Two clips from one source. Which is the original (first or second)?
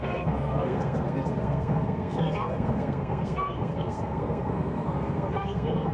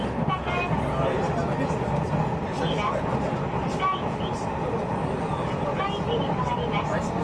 second